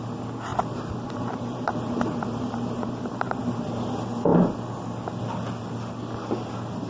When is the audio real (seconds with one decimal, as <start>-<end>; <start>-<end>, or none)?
0.0-0.5; 3.4-6.9